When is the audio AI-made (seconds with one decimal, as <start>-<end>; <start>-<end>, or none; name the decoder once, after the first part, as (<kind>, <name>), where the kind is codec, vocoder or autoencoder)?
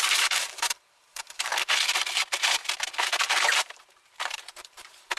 0.0-1.5 (vocoder, BigVGAN v2); 3.2-5.2